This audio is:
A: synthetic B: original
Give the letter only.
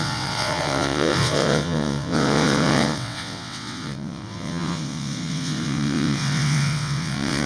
A